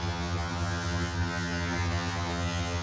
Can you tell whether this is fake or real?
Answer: fake